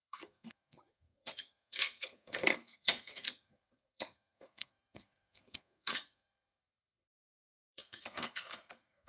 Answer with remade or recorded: remade